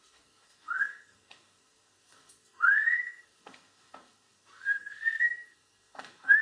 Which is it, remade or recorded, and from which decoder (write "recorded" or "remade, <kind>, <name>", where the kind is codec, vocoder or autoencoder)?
remade, codec, SNAC